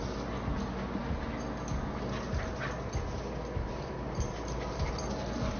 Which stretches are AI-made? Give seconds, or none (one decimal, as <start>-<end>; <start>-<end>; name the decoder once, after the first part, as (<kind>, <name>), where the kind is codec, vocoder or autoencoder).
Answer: none